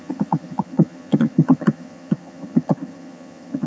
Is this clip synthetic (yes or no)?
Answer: yes